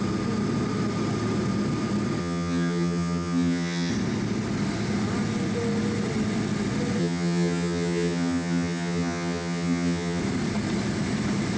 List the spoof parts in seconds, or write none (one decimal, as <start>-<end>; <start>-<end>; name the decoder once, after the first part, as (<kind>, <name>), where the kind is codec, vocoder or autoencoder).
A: 2.2-3.9 (vocoder, HiFi-GAN); 7.0-10.2